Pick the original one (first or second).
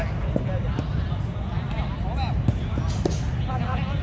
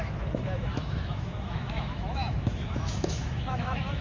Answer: first